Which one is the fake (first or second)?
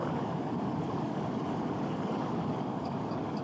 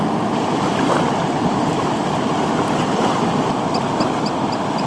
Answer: first